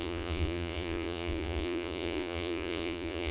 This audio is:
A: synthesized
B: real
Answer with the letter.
A